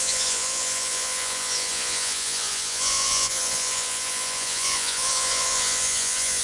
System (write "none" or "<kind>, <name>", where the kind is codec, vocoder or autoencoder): vocoder, Vocos